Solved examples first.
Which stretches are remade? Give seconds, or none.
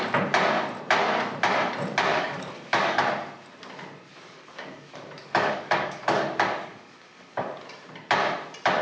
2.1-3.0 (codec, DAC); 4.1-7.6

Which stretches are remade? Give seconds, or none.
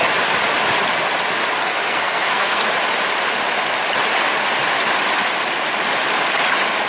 1.6-2.6 (codec, SNAC)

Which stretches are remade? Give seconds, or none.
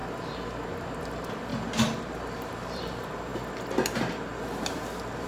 1.0-1.5 (vocoder, BigVGAN v2); 2.5-3.3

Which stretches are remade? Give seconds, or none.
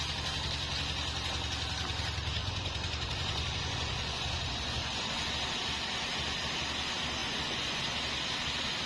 2.4-5.3 (vocoder, Vocos); 7.2-7.8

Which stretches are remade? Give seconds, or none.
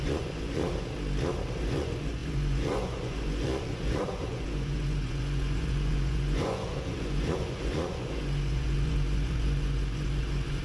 0.0-0.6 (vocoder, Vocos); 1.6-10.6